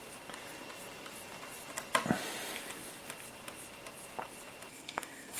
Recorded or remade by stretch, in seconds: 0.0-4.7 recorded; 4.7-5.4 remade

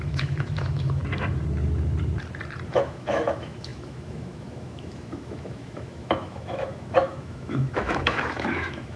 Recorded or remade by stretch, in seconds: 0.0-1.0 remade; 1.0-2.7 recorded; 2.7-9.0 remade

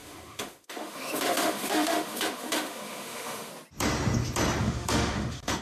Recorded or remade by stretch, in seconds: 0.0-3.5 remade; 3.5-4.6 recorded; 4.6-5.6 remade

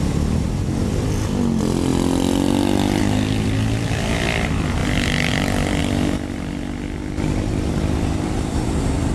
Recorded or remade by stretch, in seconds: 0.0-1.9 remade; 1.9-3.0 recorded; 3.0-5.8 remade; 5.8-7.7 recorded; 7.7-9.1 remade